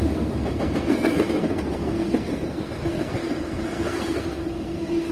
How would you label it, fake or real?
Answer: fake